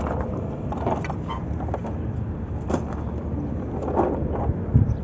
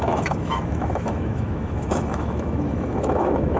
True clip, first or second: first